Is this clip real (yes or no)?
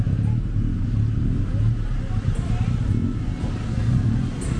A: yes